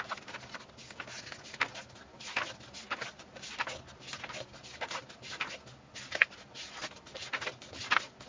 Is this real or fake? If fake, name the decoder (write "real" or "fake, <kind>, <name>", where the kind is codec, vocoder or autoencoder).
real